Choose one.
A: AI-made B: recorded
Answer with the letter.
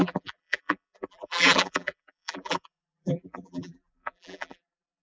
A